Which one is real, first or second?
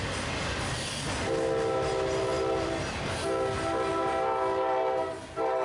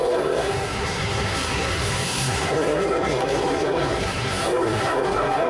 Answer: first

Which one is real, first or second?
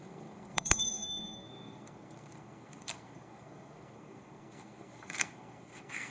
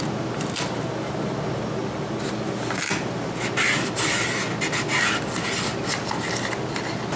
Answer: second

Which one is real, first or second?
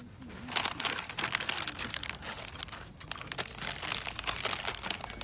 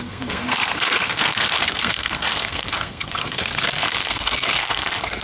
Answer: first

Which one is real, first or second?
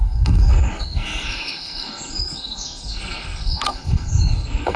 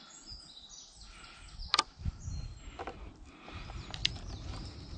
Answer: second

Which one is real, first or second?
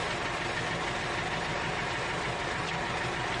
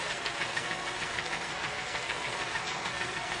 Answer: first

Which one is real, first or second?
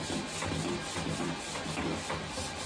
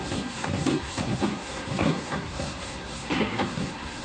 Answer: first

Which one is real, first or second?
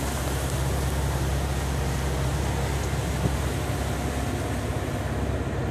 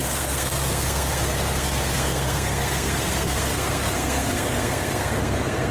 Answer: first